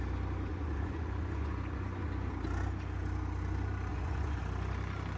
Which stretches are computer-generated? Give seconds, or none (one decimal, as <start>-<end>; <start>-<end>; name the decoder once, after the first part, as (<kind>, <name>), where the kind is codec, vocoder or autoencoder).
0.5-2.3 (vocoder, Vocos); 3.9-4.4